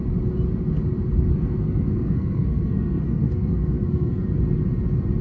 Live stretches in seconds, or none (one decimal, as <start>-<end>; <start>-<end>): 0.0-1.3; 4.4-5.2